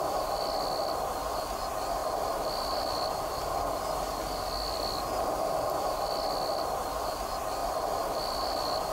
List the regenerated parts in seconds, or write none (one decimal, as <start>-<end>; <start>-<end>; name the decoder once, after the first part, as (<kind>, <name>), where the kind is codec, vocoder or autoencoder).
2.0-3.8 (vocoder, BigVGAN v2); 7.6-8.9